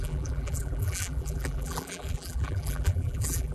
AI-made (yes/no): yes